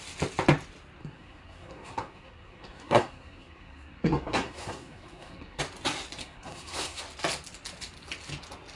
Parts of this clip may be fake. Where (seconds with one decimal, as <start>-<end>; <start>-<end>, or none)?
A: 1.0-5.6; 6.2-7.0